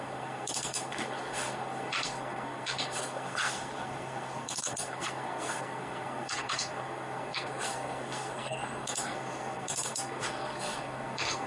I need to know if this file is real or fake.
fake